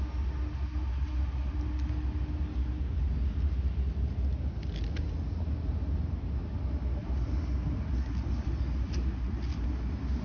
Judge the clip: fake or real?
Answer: real